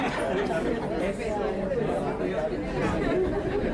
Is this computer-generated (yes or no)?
no